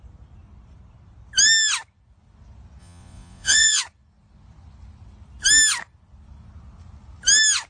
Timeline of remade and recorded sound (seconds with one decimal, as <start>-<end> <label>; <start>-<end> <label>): 0.0-2.8 recorded; 2.8-3.8 remade; 3.8-7.7 recorded